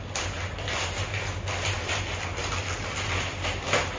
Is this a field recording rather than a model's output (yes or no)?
yes